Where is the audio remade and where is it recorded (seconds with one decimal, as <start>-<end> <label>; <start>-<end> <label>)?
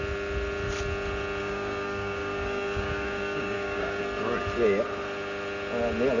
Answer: 0.0-1.4 recorded; 1.4-4.0 remade; 4.0-6.2 recorded